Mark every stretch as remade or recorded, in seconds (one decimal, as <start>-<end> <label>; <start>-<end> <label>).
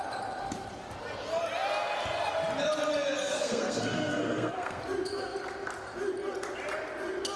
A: 0.0-3.2 recorded; 3.2-4.8 remade; 4.8-7.4 recorded